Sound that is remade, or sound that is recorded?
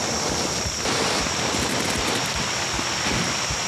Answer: recorded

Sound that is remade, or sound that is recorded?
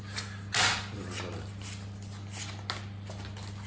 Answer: recorded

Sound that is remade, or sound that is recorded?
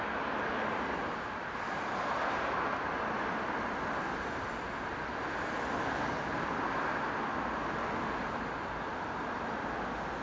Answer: recorded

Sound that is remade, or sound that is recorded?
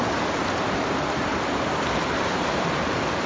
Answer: recorded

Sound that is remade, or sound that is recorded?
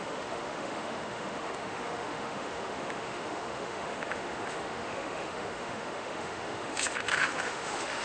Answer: remade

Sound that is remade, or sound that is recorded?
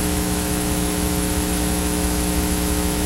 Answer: remade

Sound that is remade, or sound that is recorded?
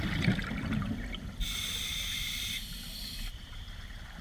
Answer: recorded